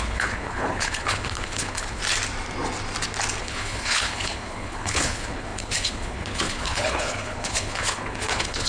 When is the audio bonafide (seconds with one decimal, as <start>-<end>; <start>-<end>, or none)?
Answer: 2.0-3.4